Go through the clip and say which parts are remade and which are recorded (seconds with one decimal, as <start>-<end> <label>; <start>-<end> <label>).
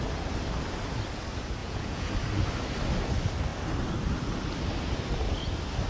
0.0-1.6 recorded; 1.6-2.1 remade; 2.1-5.9 recorded